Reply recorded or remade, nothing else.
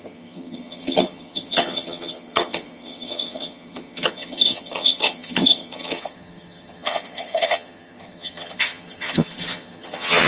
remade